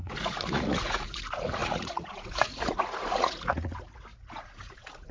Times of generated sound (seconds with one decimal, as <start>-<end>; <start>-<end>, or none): 0.0-5.1